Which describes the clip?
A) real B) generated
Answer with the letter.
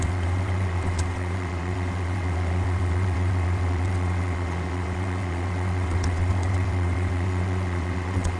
B